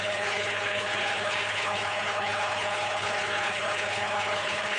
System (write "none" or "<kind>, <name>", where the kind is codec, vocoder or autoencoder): codec, HILCodec